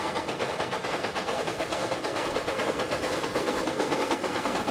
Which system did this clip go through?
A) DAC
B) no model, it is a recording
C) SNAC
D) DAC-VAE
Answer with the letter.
C